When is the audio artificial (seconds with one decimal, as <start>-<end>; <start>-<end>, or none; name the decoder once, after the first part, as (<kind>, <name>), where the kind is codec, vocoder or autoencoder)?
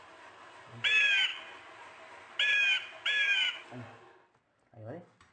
none